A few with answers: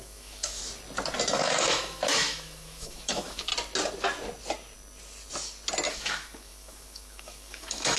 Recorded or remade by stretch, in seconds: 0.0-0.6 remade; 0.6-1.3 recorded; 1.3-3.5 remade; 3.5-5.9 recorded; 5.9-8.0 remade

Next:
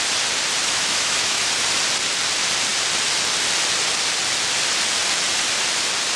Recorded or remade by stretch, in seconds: 0.0-0.6 recorded; 0.6-1.5 remade; 1.5-6.2 recorded

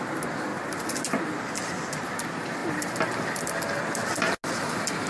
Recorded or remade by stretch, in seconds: 0.0-5.1 recorded